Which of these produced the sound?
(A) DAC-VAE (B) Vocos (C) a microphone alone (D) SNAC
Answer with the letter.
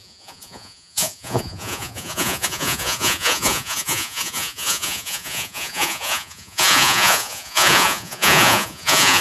B